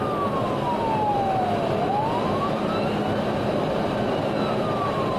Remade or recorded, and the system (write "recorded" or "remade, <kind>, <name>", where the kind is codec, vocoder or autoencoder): recorded